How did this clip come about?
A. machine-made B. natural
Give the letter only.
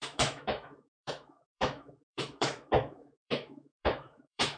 A